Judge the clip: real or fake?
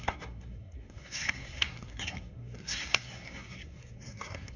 fake